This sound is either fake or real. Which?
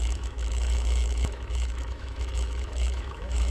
fake